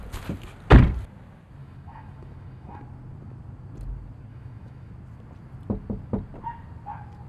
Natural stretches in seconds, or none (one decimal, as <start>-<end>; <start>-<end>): 0.0-1.6; 2.8-4.3; 4.9-7.3